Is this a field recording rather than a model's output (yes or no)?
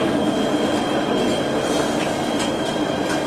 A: yes